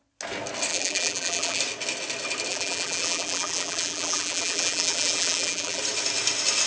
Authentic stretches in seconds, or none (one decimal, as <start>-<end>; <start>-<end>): 0.0-0.7; 1.6-2.5; 5.8-6.7